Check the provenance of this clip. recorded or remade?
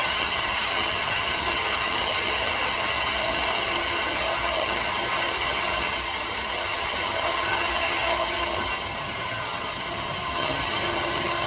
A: remade